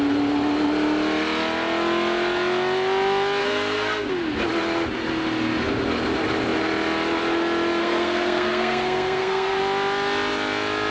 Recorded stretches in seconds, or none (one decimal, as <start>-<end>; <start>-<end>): 0.0-3.4; 4.1-7.8; 9.6-10.9